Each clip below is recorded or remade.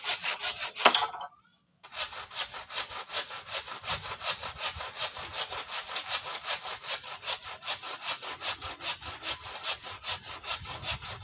recorded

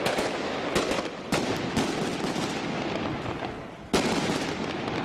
recorded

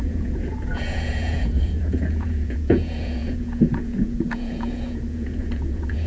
remade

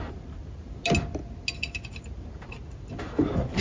recorded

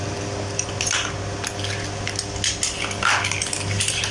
recorded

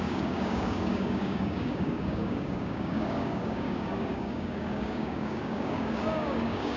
remade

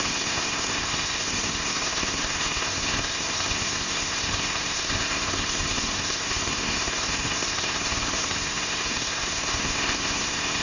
remade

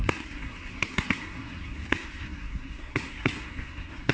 remade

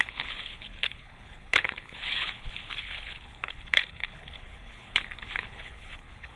remade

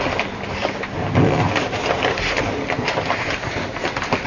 recorded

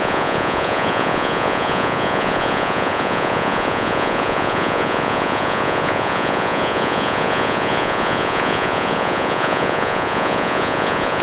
remade